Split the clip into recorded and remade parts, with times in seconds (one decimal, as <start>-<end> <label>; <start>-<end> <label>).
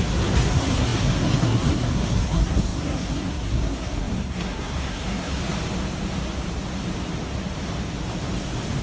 0.0-5.4 remade; 5.4-8.8 recorded